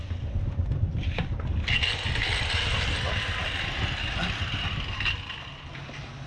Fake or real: real